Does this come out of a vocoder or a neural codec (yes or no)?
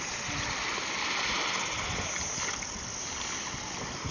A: no